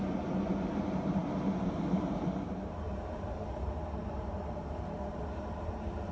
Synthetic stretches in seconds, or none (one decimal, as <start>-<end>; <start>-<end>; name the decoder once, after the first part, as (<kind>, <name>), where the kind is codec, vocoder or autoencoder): 0.0-6.1 (vocoder, BigVGAN v2)